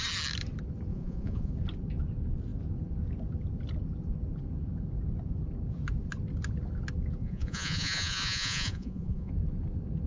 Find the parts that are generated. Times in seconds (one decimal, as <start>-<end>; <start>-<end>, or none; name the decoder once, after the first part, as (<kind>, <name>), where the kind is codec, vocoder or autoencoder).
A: 0.9-1.5 (vocoder, Vocos); 7.2-9.3